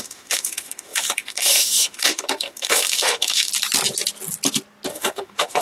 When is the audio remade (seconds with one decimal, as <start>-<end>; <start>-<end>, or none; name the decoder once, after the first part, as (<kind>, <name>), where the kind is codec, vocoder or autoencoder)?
0.0-3.5 (autoencoder, DAC-VAE); 4.9-5.6